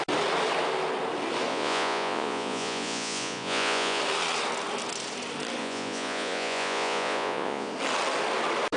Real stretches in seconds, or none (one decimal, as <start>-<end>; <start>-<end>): 0.0-1.5; 4.0-5.6; 7.7-8.8